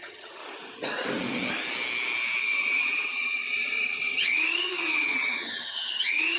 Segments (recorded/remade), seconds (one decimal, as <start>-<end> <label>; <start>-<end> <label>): 0.0-0.4 remade; 0.4-2.4 recorded; 2.4-6.4 remade